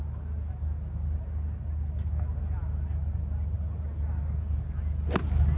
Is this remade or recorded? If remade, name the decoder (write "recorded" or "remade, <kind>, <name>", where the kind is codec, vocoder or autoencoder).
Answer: recorded